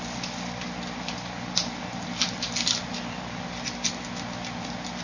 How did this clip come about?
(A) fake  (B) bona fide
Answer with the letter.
B